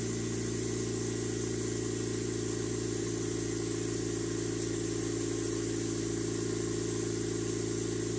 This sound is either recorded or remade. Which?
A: recorded